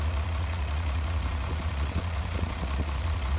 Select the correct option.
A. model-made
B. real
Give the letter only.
A